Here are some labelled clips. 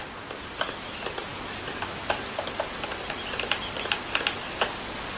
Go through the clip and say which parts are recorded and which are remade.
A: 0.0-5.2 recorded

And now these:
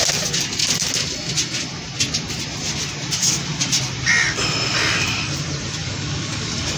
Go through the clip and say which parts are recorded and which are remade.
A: 0.0-5.8 recorded; 5.8-6.8 remade

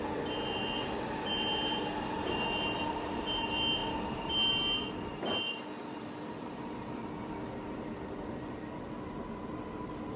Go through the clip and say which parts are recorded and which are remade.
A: 0.0-10.2 recorded

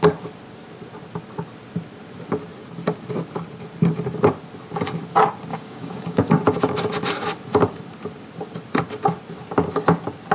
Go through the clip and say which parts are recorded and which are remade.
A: 0.0-5.5 recorded; 5.5-6.3 remade; 6.3-10.3 recorded

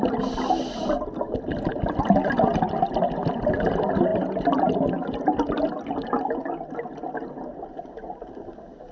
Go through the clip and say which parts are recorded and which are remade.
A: 0.0-8.9 recorded

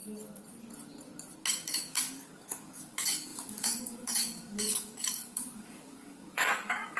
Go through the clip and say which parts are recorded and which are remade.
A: 0.0-1.5 recorded; 1.5-7.0 remade

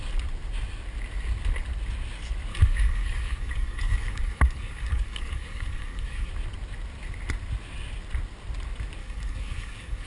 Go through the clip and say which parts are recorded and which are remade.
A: 0.0-2.5 recorded; 2.5-6.3 remade; 6.3-9.0 recorded; 9.0-10.1 remade

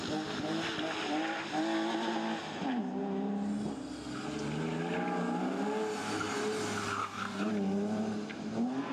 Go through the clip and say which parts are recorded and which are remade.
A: 0.0-7.0 recorded; 7.0-7.5 remade; 7.5-8.9 recorded